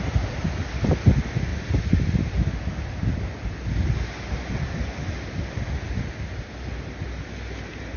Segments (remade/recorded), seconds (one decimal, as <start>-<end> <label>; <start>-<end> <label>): 0.0-8.0 recorded